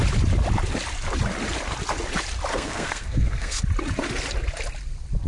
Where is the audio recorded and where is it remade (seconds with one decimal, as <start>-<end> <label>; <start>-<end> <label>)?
0.0-2.5 recorded; 2.5-3.6 remade; 3.6-5.3 recorded